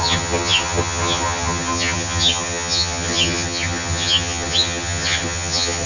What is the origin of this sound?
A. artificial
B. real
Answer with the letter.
A